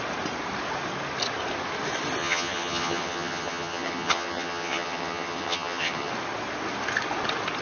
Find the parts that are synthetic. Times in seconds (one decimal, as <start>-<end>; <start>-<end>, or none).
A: 2.2-6.1